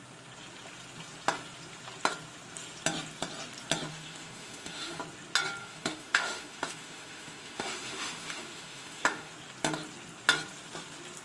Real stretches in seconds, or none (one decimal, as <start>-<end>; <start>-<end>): 0.0-3.9; 5.0-5.6; 9.3-11.2